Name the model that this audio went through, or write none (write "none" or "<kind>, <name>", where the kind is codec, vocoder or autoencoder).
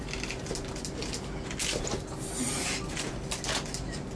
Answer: none